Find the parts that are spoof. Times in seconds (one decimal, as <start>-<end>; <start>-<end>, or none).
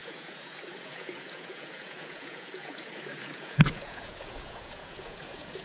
0.0-5.6